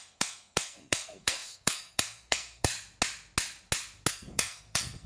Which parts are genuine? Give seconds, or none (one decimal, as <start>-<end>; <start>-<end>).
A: 2.7-4.1